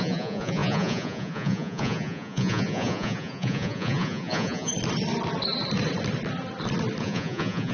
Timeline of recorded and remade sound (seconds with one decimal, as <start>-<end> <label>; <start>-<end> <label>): 0.0-4.7 remade; 4.7-7.0 recorded; 7.0-7.7 remade